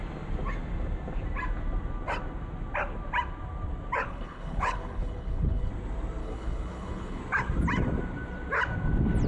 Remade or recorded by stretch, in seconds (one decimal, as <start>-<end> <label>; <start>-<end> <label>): 0.0-4.1 recorded; 4.1-5.7 remade; 5.7-6.2 recorded; 6.2-7.2 remade; 7.2-9.3 recorded

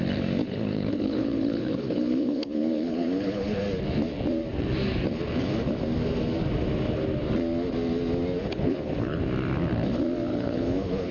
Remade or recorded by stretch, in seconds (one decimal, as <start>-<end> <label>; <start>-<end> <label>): 0.0-0.4 recorded; 0.4-3.6 remade; 3.6-8.4 recorded; 8.4-9.2 remade; 9.2-10.3 recorded; 10.3-11.1 remade

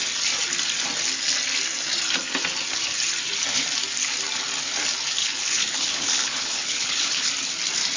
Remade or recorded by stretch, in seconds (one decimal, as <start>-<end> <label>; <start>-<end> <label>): 0.0-5.2 recorded; 5.2-7.3 remade; 7.3-8.0 recorded

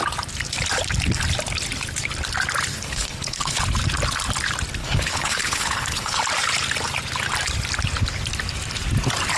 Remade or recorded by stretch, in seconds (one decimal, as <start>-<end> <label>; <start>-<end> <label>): 0.0-2.7 recorded; 2.7-3.6 remade; 3.6-4.8 recorded; 4.8-6.2 remade; 6.2-9.4 recorded